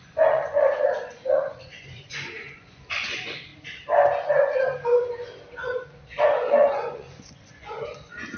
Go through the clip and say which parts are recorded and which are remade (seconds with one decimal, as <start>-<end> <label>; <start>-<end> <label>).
0.0-3.5 remade; 3.5-6.2 recorded; 6.2-8.4 remade